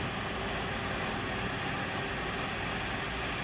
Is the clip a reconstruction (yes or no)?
no